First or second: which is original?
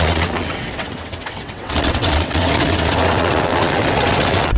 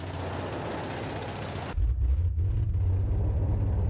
second